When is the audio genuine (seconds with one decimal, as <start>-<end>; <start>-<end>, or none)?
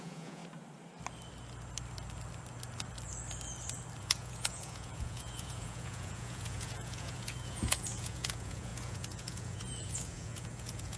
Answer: 0.4-4.0